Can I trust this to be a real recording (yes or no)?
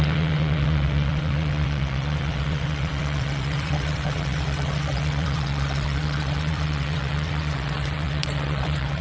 no